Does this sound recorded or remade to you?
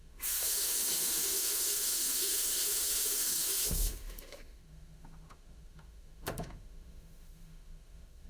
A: remade